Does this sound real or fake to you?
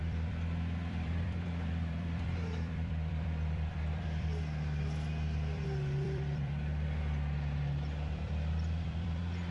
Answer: fake